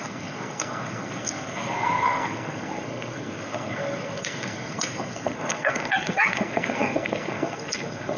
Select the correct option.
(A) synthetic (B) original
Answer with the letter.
A